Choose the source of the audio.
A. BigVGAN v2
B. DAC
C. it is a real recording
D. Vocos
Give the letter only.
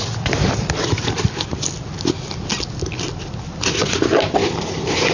C